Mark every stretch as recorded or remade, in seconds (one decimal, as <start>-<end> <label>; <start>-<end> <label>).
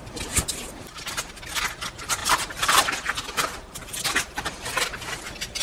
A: 0.0-2.2 recorded; 2.2-2.8 remade; 2.8-5.6 recorded